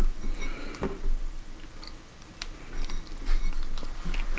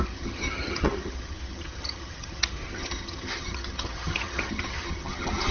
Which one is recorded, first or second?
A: first